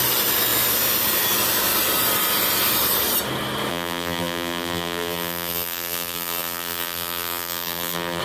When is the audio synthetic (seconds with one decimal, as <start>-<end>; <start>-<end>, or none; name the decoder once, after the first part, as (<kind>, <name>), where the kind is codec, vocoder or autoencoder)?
3.7-8.2 (vocoder, BigVGAN v2)